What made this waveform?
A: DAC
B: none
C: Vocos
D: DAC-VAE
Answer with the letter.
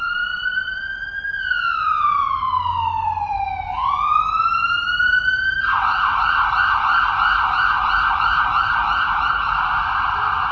B